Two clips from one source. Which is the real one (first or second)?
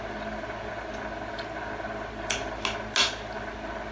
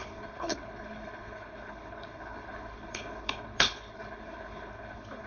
first